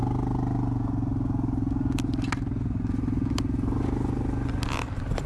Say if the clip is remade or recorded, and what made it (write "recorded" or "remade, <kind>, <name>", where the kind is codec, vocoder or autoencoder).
recorded